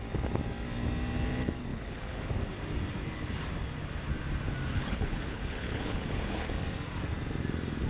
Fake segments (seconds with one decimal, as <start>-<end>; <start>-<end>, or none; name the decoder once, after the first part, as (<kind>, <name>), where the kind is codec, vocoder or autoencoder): 1.7-2.2 (codec, HILCodec); 4.7-6.5